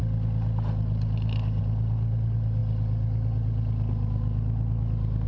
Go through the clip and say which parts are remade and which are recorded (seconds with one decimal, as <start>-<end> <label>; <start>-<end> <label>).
0.0-5.3 recorded